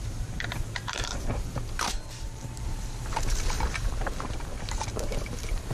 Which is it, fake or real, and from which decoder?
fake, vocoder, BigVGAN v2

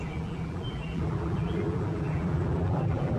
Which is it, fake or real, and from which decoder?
fake, vocoder, BigVGAN v2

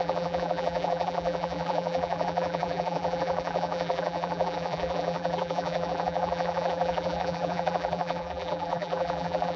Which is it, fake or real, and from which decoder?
fake, vocoder, BigVGAN v2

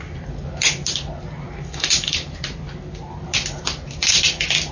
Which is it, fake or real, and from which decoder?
real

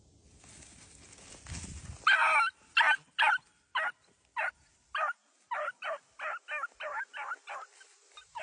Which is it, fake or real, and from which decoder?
real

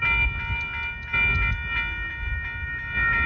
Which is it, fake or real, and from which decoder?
real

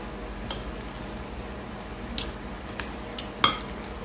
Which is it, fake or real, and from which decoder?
real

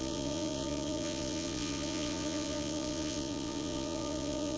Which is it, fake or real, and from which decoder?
fake, vocoder, Vocos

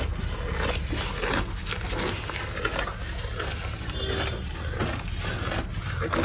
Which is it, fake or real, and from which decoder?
real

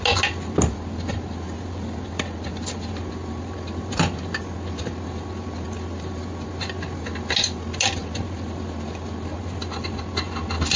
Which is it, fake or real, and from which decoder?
real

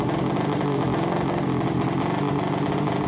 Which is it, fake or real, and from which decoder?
real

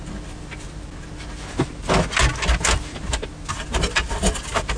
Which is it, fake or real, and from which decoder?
real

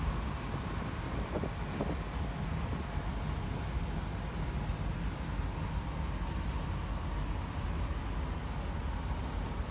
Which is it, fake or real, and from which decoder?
real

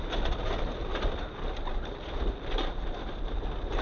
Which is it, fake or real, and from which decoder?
real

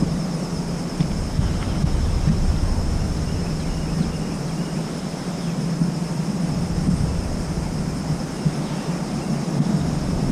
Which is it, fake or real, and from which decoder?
real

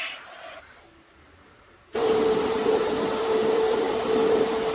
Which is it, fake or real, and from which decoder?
fake, vocoder, BigVGAN v2